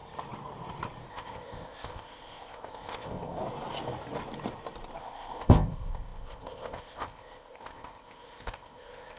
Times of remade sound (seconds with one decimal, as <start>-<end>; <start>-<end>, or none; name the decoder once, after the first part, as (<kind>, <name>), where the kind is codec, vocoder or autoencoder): 1.1-3.4 (codec, ZipCodec); 5.0-9.2